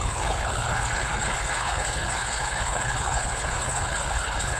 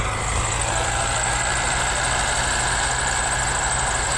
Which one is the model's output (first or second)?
first